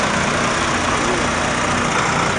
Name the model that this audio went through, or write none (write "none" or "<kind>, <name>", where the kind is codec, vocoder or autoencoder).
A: none